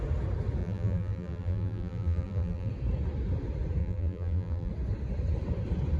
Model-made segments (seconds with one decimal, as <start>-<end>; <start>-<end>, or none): 0.6-2.7; 3.8-4.7